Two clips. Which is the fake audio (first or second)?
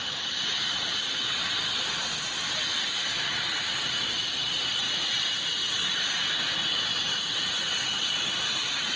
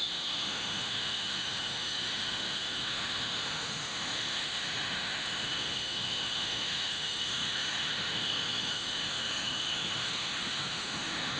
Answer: second